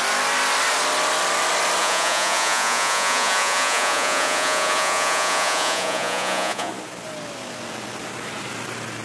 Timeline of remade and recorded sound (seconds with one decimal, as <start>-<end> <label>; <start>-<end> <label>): 0.0-1.8 recorded; 1.8-6.7 remade; 6.7-9.0 recorded